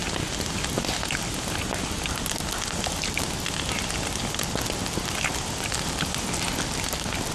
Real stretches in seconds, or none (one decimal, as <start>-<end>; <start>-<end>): 0.0-7.3